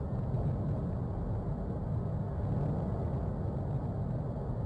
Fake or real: real